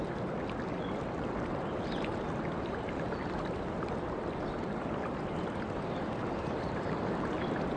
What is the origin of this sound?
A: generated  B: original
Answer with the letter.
B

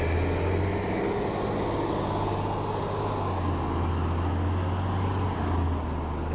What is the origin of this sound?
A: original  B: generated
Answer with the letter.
A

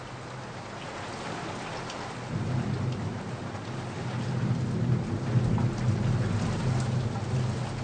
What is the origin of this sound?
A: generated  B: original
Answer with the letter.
B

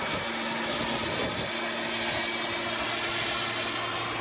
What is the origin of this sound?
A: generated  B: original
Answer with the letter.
B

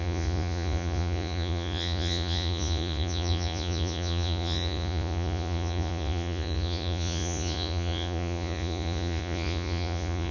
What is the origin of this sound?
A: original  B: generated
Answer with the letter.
B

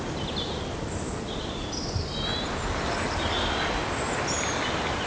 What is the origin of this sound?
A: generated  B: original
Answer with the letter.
B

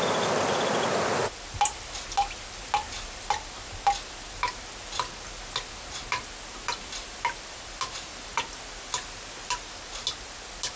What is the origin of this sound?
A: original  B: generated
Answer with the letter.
A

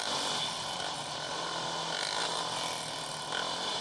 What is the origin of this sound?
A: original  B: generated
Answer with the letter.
A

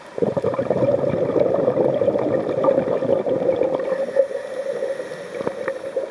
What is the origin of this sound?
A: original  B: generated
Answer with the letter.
A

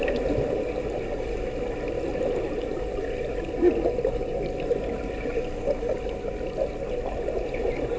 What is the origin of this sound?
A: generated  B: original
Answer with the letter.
B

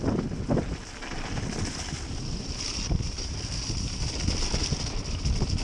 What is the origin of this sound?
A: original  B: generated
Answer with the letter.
A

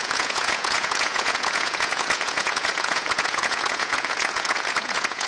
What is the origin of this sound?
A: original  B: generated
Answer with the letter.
B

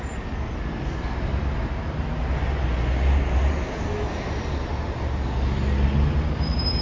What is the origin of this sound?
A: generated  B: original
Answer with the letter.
B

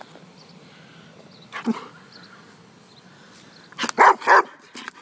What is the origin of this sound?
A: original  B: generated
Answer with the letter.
A